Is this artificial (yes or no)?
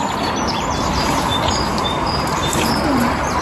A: yes